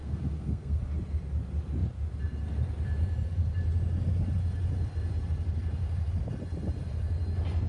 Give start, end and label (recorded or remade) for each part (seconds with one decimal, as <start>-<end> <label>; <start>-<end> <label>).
0.0-0.8 remade; 0.8-7.7 recorded